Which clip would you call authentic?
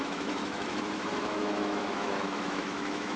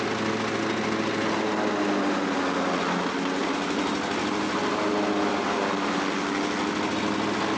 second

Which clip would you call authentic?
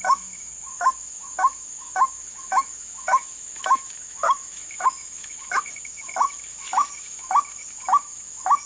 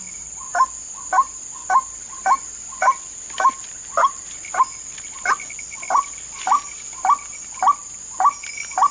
second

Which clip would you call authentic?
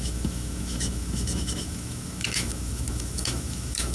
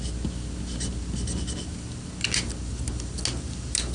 second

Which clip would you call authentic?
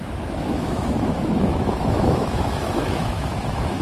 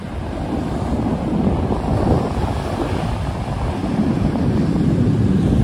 second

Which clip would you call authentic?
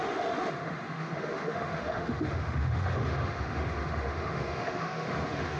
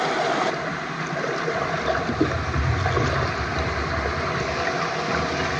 second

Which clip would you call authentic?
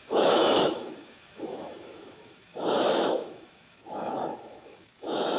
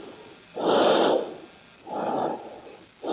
second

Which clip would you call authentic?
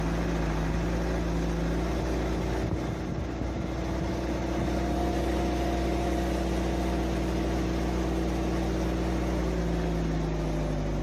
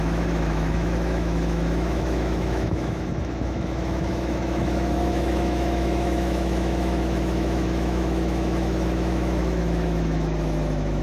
first